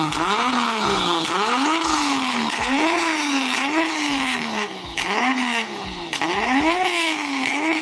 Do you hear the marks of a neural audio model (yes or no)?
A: yes